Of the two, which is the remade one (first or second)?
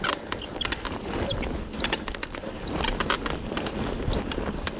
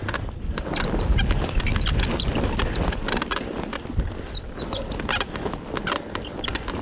first